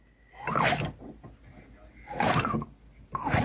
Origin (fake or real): real